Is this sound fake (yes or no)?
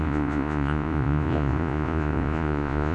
yes